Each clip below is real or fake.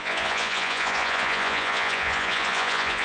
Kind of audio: fake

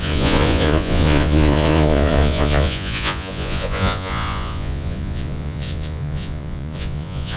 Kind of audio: fake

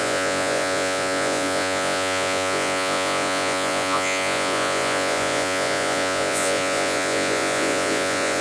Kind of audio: fake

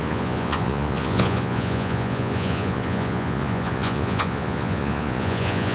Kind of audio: fake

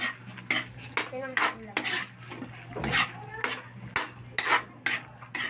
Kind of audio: real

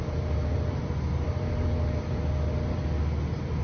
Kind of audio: real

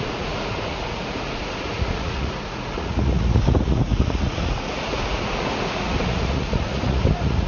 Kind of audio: fake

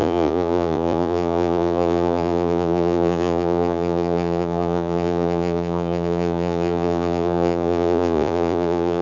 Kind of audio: fake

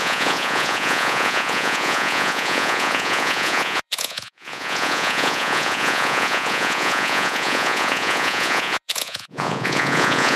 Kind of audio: fake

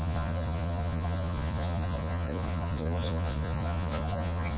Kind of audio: fake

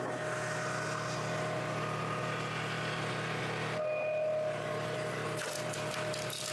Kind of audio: real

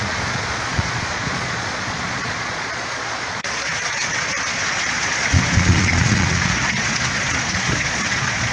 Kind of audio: fake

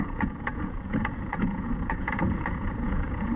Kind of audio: fake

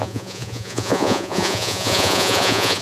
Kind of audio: fake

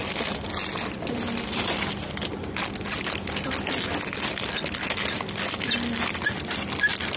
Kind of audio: real